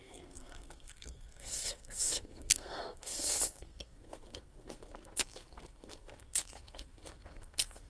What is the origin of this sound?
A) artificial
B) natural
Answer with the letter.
A